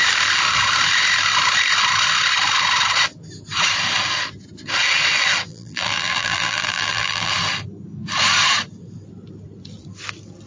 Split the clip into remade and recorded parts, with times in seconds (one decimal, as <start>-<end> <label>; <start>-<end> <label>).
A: 0.0-5.5 recorded; 5.5-7.3 remade; 7.3-10.5 recorded